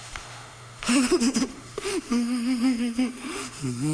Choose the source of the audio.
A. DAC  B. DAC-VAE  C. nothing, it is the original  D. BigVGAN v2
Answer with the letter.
B